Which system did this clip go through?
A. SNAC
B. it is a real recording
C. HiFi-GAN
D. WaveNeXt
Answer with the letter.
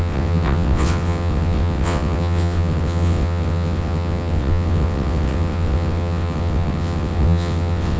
D